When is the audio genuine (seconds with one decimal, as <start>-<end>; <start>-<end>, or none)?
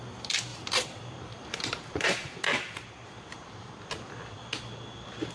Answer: 0.0-0.5; 3.7-5.3